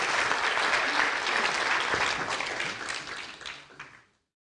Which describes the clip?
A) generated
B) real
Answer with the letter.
B